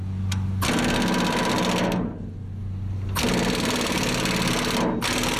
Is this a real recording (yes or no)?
yes